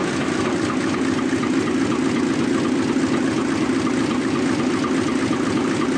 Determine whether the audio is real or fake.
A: real